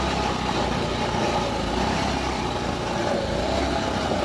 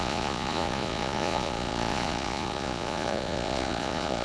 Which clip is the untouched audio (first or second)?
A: first